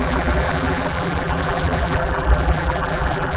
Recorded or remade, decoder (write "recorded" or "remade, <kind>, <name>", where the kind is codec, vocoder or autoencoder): remade, vocoder, BigVGAN v2